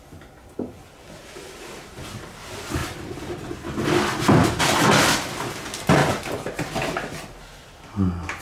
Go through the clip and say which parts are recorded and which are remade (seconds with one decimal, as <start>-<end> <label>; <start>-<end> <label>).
0.0-8.4 recorded